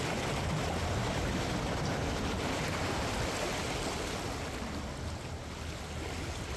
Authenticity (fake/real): real